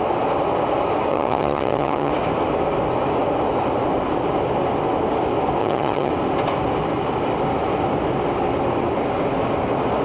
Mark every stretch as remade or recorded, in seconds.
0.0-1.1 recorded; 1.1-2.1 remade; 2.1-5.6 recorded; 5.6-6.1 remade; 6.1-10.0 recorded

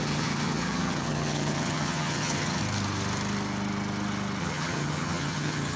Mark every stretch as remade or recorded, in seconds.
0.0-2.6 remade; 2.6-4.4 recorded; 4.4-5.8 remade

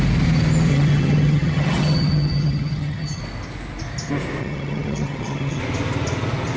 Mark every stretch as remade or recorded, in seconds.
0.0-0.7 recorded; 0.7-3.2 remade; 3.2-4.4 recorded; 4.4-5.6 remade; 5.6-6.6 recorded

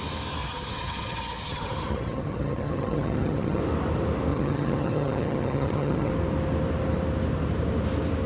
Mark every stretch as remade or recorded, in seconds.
0.0-0.4 recorded; 0.4-3.6 remade; 3.6-4.3 recorded; 4.3-6.1 remade; 6.1-8.3 recorded